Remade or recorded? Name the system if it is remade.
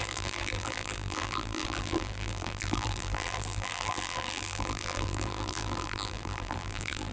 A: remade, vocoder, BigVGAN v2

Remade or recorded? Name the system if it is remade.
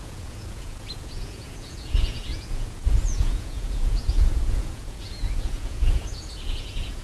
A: remade, vocoder, Vocos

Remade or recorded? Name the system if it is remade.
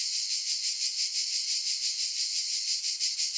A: recorded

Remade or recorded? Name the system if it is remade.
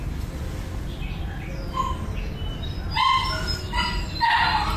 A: recorded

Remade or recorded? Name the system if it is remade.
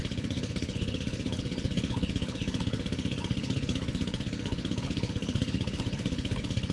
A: remade, codec, HILCodec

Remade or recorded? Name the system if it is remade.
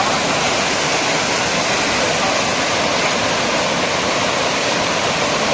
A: recorded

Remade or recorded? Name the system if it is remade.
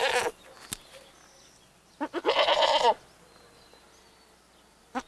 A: recorded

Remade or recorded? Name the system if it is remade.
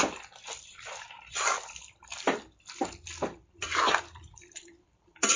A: remade, vocoder, BigVGAN v2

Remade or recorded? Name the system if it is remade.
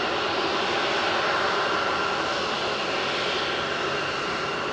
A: recorded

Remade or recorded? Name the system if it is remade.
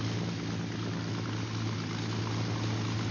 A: recorded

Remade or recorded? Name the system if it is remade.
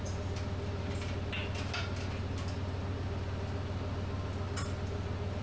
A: recorded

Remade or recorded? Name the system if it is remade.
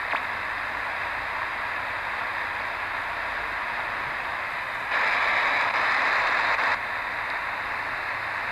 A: recorded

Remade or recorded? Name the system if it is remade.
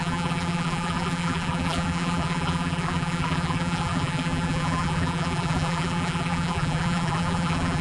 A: remade, vocoder, BigVGAN v2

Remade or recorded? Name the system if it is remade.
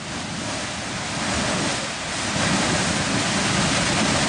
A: recorded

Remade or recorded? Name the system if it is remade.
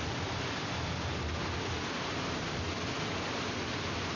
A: recorded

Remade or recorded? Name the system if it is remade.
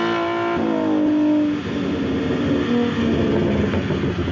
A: recorded